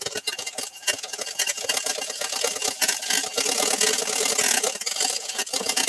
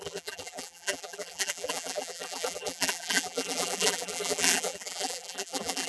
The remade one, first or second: second